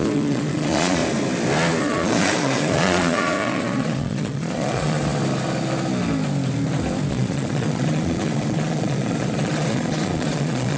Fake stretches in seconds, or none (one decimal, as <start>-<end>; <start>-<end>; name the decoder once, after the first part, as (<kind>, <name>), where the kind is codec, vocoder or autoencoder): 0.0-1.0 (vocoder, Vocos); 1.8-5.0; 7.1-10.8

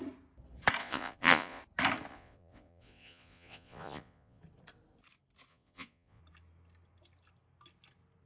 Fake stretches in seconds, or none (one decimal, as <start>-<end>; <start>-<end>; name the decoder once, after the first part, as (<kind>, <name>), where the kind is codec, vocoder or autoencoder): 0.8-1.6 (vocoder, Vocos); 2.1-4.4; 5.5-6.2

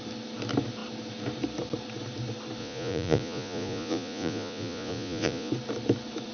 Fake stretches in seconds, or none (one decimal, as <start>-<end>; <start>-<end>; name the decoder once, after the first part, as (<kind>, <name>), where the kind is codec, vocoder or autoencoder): 2.6-5.5 (vocoder, Vocos)

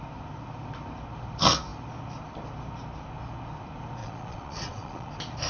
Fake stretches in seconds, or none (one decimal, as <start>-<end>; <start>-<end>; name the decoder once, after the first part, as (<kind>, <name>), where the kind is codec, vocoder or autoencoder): 4.0-5.1 (vocoder, Vocos)